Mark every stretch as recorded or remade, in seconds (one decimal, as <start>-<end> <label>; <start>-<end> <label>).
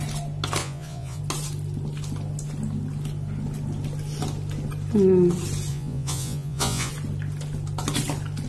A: 0.0-0.6 recorded; 0.6-1.2 remade; 1.2-5.7 recorded; 5.7-6.9 remade; 6.9-8.5 recorded